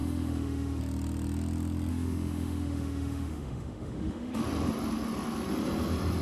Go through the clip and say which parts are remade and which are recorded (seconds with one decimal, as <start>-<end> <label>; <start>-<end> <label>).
0.0-0.8 remade; 0.8-1.9 recorded; 1.9-4.4 remade; 4.4-6.2 recorded